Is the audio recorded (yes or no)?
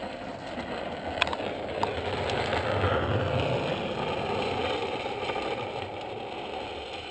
yes